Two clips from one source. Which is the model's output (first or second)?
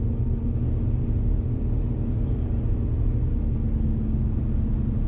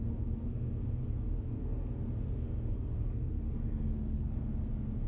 second